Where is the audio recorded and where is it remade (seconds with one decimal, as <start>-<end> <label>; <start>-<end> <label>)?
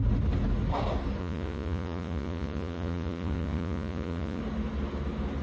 0.0-1.2 recorded; 1.2-4.4 remade; 4.4-5.4 recorded